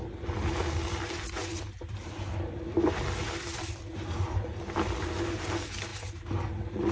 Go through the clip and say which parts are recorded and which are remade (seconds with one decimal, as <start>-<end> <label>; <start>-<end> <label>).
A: 0.0-1.4 recorded; 1.4-5.0 remade; 5.0-6.9 recorded